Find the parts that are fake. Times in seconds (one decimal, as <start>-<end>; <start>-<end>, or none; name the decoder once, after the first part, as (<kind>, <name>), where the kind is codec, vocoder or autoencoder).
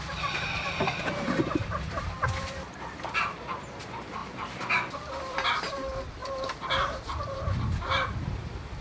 0.0-8.8 (vocoder, BigVGAN v2)